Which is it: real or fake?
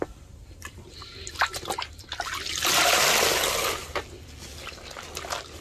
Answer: real